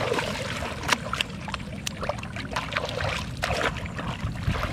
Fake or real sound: real